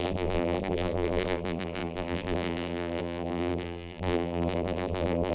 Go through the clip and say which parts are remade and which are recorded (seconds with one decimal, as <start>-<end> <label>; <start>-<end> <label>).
0.0-5.3 remade